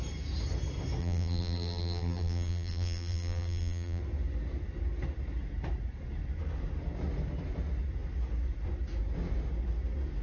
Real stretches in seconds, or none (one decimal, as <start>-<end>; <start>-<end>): 0.0-1.0; 4.0-10.2